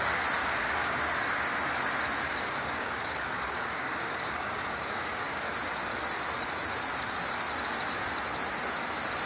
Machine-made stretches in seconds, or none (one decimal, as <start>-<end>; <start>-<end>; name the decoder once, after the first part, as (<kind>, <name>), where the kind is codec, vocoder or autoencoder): 0.4-1.0 (codec, DAC); 2.3-5.5